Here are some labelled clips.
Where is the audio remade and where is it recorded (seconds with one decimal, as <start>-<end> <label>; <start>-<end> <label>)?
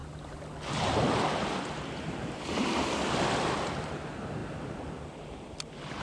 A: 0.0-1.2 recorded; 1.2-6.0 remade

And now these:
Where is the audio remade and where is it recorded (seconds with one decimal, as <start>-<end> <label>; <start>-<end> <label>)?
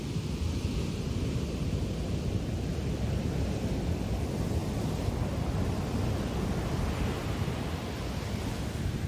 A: 0.0-9.1 recorded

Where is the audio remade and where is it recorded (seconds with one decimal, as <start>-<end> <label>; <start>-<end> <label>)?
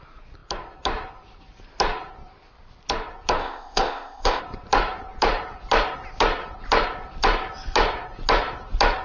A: 0.0-3.4 recorded; 3.4-4.4 remade; 4.4-9.0 recorded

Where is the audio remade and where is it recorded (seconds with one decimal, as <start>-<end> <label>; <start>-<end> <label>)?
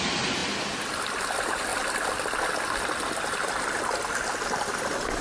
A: 0.0-5.2 recorded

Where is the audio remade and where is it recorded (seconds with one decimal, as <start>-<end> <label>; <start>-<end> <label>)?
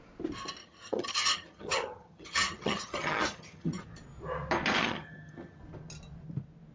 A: 0.0-0.6 recorded; 0.6-3.8 remade; 3.8-4.8 recorded; 4.8-5.6 remade; 5.6-6.7 recorded